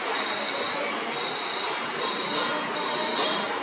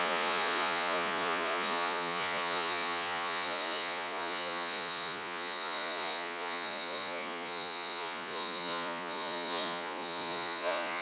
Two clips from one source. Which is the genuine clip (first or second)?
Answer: first